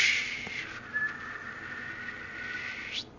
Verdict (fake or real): real